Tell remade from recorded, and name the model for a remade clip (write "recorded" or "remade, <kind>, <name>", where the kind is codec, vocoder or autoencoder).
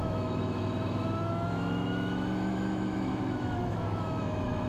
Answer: remade, autoencoder, DAC-VAE